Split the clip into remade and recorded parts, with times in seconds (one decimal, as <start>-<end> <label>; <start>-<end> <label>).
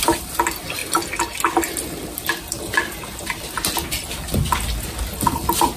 0.0-5.8 recorded